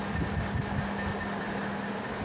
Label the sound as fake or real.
real